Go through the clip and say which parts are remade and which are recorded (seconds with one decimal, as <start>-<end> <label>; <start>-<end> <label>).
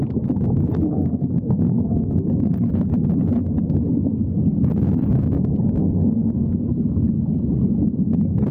0.0-0.9 recorded; 0.9-2.7 remade; 2.7-5.8 recorded; 5.8-6.6 remade; 6.6-8.5 recorded